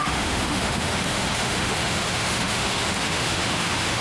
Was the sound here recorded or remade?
remade